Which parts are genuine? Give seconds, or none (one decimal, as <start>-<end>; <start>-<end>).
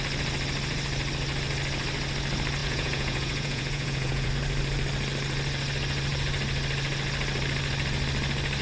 0.0-2.6; 4.3-8.6